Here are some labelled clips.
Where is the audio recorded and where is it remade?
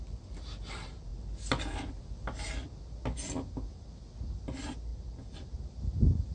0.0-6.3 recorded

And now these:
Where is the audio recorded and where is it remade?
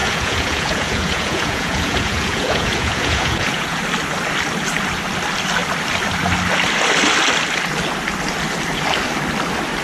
0.0-3.8 remade; 3.8-9.8 recorded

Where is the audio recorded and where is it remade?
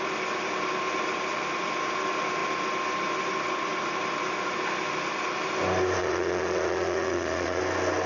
0.0-6.0 recorded; 6.0-7.6 remade; 7.6-8.1 recorded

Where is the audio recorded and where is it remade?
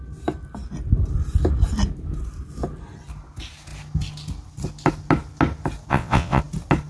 0.0-5.9 recorded; 5.9-6.4 remade; 6.4-6.9 recorded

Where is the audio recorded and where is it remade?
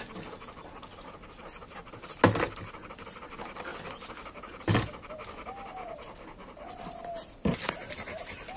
0.0-8.6 recorded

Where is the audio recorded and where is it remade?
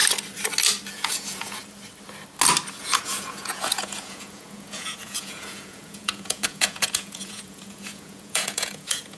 0.0-0.9 recorded; 0.9-1.6 remade; 1.6-2.8 recorded; 2.8-9.2 remade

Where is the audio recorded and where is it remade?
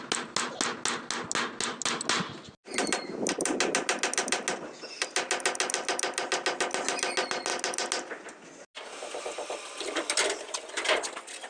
0.0-11.5 recorded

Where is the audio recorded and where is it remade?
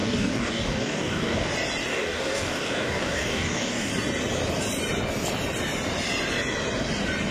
0.0-1.5 remade; 1.5-1.9 recorded; 1.9-3.9 remade; 3.9-7.3 recorded